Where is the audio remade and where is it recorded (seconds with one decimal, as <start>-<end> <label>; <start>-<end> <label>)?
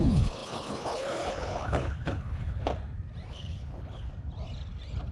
0.0-2.7 remade; 2.7-3.3 recorded; 3.3-4.1 remade; 4.1-5.1 recorded